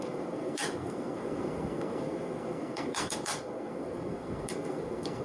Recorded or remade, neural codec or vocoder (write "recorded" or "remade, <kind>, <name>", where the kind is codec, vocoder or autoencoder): remade, codec, SNAC